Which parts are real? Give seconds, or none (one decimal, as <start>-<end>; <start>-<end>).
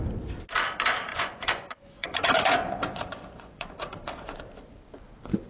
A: 0.0-1.1; 4.4-5.5